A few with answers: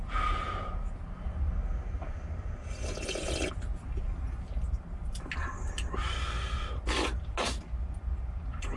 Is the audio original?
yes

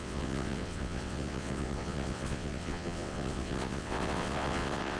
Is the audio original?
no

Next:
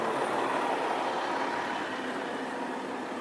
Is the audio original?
yes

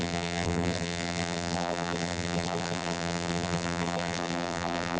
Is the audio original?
no